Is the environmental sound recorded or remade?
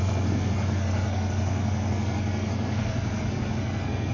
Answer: remade